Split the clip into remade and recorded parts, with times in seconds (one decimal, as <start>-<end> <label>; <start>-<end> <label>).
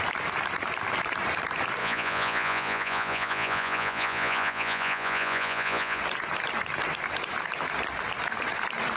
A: 0.0-1.8 recorded; 1.8-6.0 remade; 6.0-9.0 recorded